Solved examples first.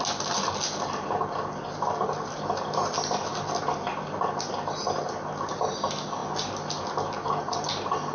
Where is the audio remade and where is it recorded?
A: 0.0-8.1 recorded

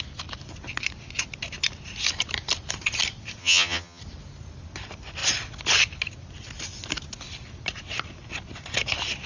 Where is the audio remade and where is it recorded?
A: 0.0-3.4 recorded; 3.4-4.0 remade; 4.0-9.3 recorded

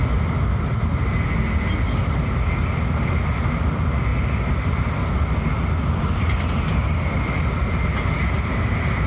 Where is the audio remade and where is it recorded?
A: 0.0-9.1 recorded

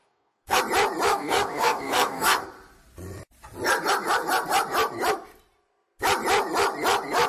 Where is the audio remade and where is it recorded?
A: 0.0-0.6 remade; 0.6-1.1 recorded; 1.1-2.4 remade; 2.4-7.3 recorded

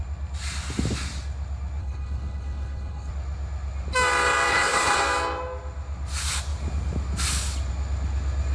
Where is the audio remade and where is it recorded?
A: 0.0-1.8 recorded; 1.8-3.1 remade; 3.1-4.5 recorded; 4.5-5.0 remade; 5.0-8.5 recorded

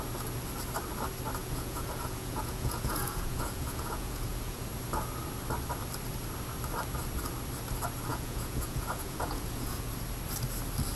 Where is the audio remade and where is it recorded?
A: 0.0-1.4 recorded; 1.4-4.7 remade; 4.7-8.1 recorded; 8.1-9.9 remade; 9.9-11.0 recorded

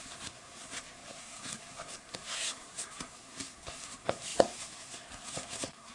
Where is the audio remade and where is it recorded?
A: 0.0-5.9 remade

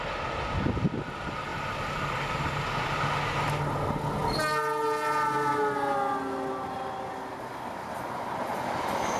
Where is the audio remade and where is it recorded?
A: 0.0-9.2 recorded